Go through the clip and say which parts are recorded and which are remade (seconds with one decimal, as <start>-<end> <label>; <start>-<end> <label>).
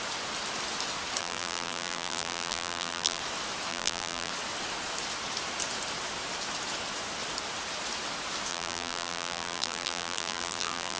0.0-1.2 recorded; 1.2-3.2 remade; 3.2-3.7 recorded; 3.7-4.3 remade; 4.3-8.5 recorded; 8.5-11.0 remade